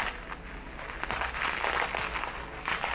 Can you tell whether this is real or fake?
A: real